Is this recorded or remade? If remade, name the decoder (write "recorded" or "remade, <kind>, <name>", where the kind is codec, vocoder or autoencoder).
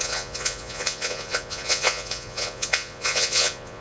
remade, vocoder, Vocos